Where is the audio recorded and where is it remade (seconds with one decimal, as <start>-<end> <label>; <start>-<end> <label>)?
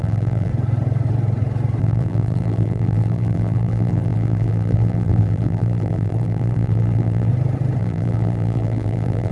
0.0-0.5 remade; 0.5-1.8 recorded; 1.8-7.3 remade; 7.3-7.8 recorded; 7.8-9.3 remade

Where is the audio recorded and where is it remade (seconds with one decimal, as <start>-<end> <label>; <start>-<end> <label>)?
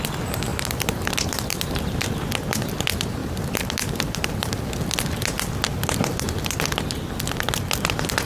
0.0-0.5 recorded; 0.5-1.8 remade; 1.8-3.2 recorded; 3.2-4.7 remade; 4.7-8.3 recorded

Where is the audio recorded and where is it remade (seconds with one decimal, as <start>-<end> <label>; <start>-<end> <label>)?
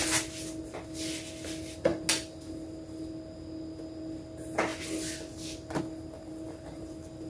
0.0-7.3 recorded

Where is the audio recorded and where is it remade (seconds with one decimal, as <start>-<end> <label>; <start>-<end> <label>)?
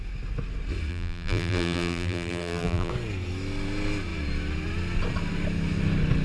0.0-0.9 recorded; 0.9-2.9 remade; 2.9-6.2 recorded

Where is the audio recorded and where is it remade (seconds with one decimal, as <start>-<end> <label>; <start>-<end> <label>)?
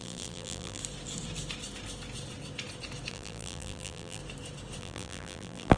0.0-0.8 remade; 0.8-3.1 recorded; 3.1-4.2 remade; 4.2-4.8 recorded; 4.8-5.8 remade